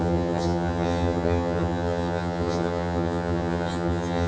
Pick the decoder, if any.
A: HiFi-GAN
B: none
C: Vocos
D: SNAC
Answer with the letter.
A